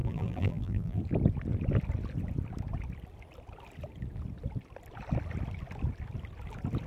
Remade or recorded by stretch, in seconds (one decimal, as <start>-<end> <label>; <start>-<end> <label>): 0.0-1.0 remade; 1.0-6.9 recorded